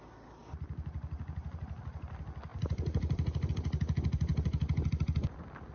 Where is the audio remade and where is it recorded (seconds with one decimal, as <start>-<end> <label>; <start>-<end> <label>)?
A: 0.0-2.5 recorded; 2.5-3.5 remade; 3.5-5.7 recorded